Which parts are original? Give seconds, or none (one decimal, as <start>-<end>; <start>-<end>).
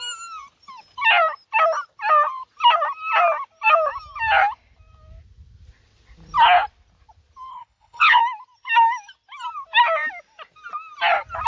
0.0-7.5; 8.2-11.5